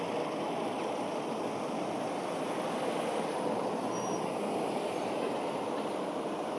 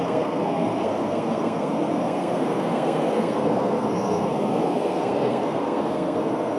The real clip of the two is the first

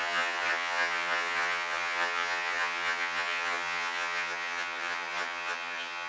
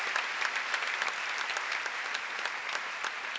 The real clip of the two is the second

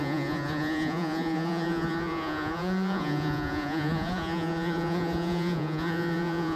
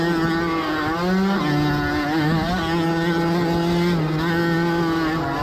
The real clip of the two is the second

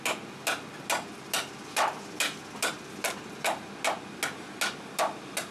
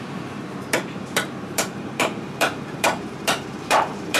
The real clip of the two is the first